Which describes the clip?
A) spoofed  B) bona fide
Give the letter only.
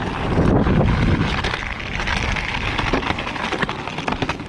B